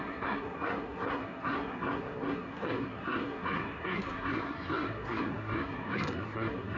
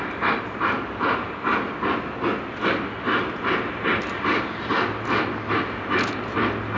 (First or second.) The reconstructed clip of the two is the first